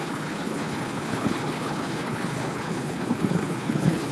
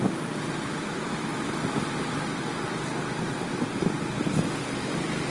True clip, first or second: second